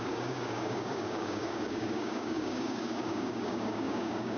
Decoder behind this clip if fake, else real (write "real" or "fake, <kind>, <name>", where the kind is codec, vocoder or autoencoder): fake, codec, DAC